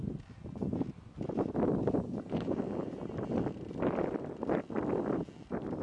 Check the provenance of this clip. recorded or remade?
recorded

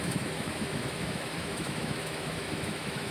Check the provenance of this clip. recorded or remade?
remade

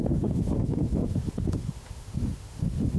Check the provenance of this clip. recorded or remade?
remade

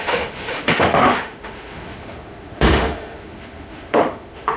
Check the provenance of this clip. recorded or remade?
remade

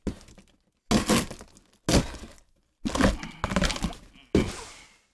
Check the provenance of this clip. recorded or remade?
recorded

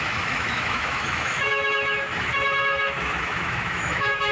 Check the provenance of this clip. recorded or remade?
remade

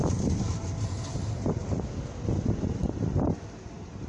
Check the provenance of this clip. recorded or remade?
recorded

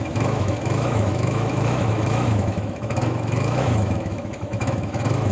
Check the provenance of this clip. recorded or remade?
remade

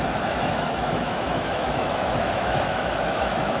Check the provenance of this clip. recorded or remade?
remade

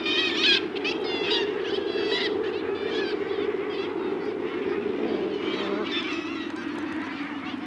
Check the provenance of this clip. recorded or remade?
recorded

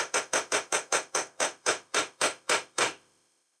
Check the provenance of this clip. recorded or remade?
remade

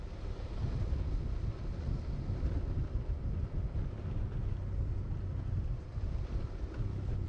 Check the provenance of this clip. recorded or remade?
recorded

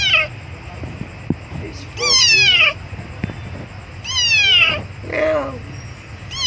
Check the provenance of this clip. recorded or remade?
recorded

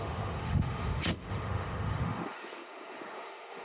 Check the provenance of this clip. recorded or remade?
remade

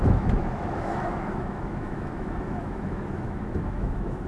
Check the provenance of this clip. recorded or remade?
remade